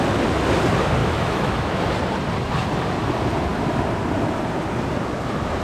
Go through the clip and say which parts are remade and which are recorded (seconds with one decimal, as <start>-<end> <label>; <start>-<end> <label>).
0.0-1.0 recorded; 1.0-1.8 remade; 1.8-5.6 recorded